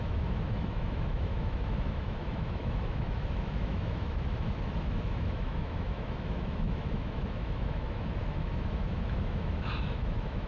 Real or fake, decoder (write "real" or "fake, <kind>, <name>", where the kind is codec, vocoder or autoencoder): fake, autoencoder, DAC-VAE